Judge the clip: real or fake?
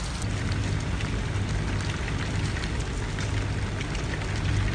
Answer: real